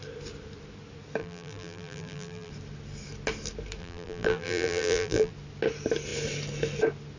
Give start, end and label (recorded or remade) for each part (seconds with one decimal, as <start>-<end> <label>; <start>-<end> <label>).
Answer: 0.0-1.2 recorded; 1.2-2.5 remade; 2.5-3.8 recorded; 3.8-5.3 remade; 5.3-7.2 recorded